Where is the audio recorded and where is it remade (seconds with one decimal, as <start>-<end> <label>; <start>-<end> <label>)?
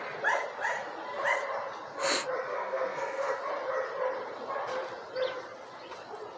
0.0-2.5 recorded; 2.5-3.4 remade; 3.4-6.4 recorded